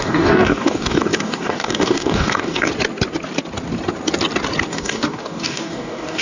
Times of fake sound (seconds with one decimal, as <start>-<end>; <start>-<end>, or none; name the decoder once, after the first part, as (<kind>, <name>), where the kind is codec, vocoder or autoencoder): 0.0-2.7 (codec, DAC); 4.7-6.2